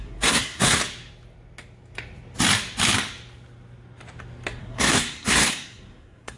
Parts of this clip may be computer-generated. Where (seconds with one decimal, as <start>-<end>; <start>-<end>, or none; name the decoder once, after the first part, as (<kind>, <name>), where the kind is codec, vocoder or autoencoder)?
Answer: 0.0-0.8 (codec, SNAC); 4.6-6.4